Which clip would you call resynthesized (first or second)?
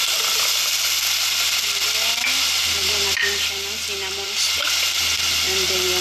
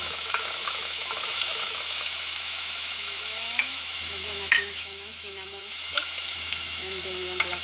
second